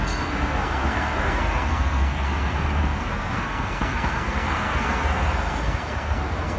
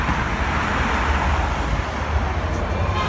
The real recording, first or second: second